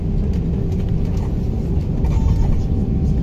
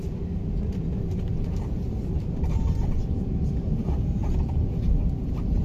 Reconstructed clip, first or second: second